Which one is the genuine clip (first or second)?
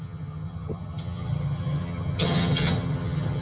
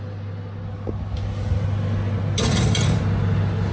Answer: second